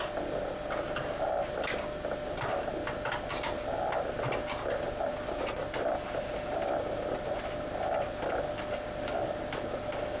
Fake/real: real